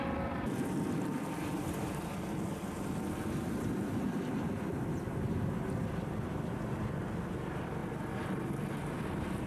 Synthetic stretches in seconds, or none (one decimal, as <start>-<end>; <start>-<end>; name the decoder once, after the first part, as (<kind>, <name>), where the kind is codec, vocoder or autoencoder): 0.0-7.8 (vocoder, BigVGAN v2); 9.0-9.5